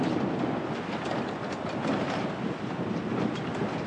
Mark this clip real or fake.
real